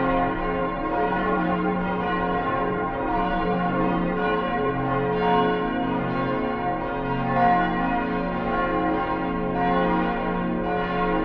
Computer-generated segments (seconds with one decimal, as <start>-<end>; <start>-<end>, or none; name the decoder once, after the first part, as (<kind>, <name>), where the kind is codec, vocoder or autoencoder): 0.6-4.7 (vocoder, BigVGAN v2)